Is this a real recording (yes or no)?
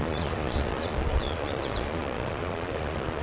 no